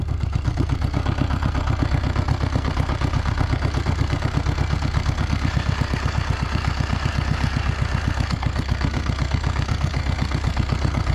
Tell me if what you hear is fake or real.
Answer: fake